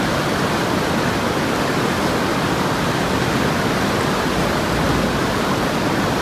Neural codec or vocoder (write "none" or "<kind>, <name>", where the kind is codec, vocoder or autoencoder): none